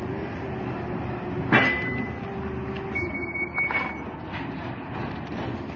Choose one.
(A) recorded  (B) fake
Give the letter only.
A